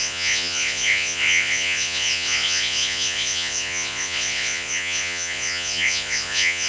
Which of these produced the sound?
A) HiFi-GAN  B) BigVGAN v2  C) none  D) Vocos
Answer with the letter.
D